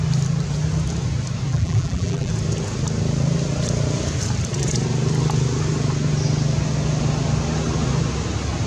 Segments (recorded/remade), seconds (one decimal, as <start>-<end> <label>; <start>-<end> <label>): 0.0-1.5 recorded; 1.5-2.3 remade; 2.3-8.7 recorded